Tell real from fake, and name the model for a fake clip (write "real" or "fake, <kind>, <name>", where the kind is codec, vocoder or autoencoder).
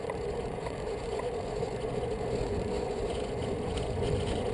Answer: fake, vocoder, Vocos